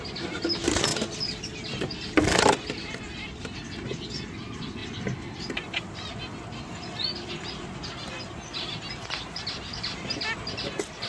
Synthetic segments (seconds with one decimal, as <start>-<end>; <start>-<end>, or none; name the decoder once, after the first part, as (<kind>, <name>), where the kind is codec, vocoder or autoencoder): 0.9-3.0 (vocoder, BigVGAN v2); 4.8-7.3